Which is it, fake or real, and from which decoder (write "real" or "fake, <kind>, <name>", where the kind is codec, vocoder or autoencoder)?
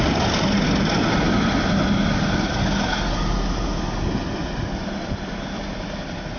real